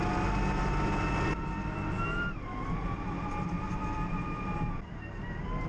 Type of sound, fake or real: real